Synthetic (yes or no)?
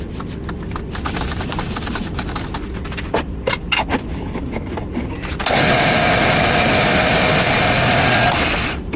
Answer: no